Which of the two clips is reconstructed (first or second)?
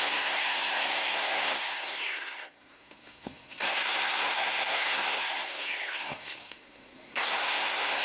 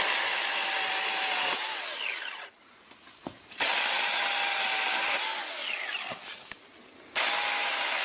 first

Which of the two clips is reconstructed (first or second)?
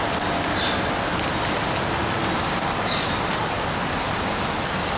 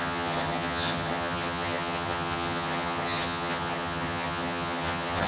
second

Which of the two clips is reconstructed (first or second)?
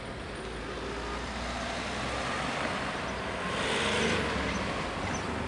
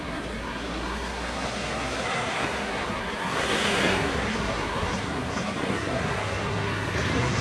second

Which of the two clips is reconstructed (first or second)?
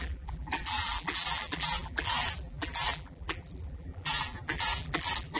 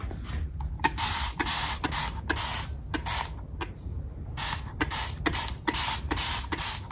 first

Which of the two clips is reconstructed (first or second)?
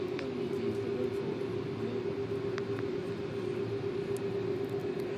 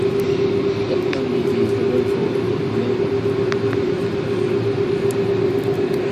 second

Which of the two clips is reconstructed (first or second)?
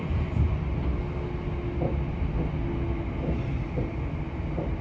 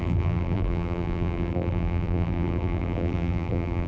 second